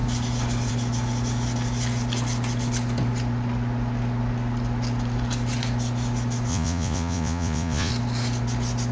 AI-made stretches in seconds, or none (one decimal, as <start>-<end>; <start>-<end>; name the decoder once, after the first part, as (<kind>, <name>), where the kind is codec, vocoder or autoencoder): 6.5-7.9 (vocoder, Vocos)